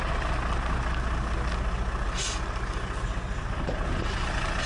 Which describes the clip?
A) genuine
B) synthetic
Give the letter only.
A